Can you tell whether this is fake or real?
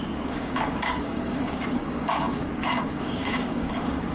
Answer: fake